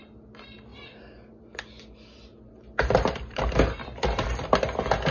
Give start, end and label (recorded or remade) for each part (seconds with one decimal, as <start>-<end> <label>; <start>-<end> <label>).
0.0-0.7 recorded; 0.7-1.6 remade; 1.6-2.3 recorded; 2.3-3.5 remade; 3.5-5.1 recorded